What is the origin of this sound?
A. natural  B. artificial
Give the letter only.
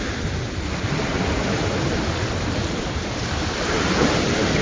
B